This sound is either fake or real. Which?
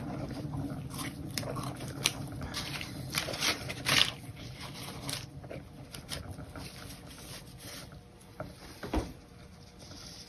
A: fake